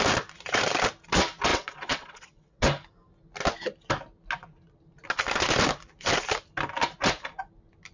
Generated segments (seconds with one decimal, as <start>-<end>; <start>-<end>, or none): 1.5-2.6